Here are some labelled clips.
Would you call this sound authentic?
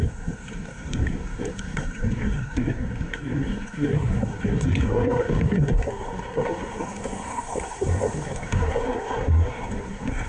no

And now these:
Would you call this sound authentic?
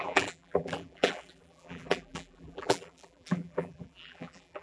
no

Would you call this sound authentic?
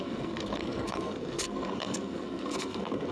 no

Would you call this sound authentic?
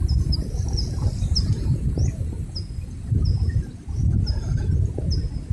yes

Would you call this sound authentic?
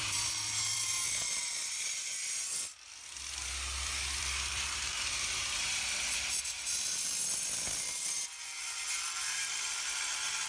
no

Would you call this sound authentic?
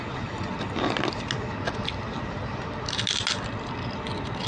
yes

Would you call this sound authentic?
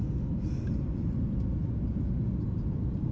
yes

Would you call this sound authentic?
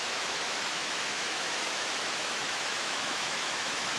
no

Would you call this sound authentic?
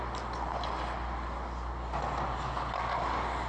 yes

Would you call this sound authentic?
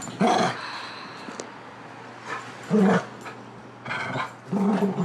yes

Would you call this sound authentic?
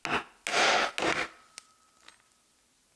yes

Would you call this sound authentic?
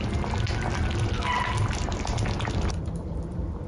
yes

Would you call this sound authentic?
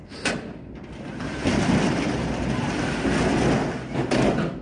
yes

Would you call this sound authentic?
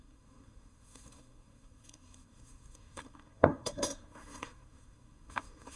no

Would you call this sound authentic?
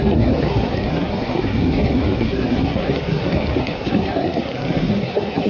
no